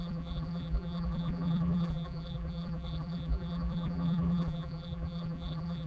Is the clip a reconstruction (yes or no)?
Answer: yes